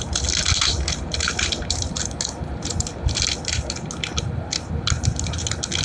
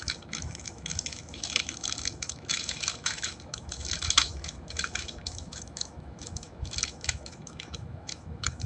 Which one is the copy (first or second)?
second